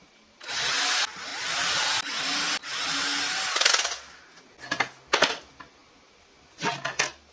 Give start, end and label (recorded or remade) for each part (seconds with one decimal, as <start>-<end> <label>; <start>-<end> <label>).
0.0-7.3 recorded